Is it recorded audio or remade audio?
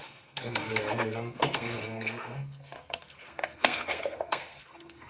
remade